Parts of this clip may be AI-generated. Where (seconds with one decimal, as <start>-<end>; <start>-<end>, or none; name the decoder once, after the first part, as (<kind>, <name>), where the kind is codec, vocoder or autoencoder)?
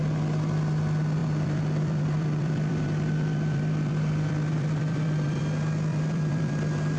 1.2-5.4 (vocoder, BigVGAN v2); 5.9-6.5